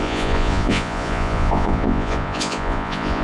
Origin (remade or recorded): remade